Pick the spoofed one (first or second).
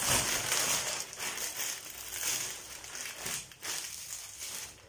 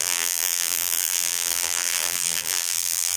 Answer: second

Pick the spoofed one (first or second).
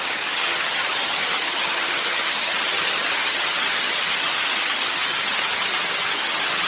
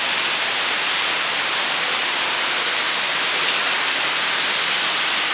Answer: first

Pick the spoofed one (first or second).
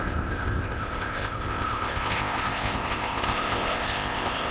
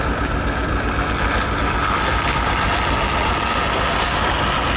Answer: first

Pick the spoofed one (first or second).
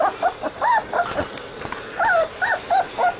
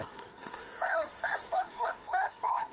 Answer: second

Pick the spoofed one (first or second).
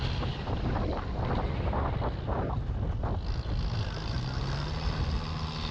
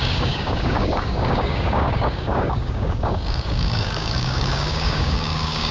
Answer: second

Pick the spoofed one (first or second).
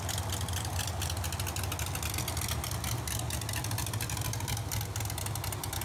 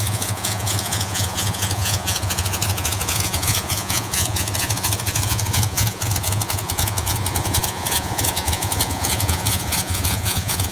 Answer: second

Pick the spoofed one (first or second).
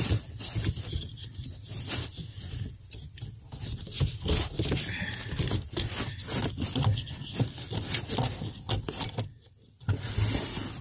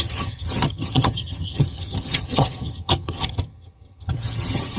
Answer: second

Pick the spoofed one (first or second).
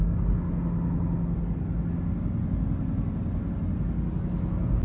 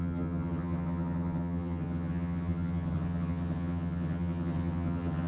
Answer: second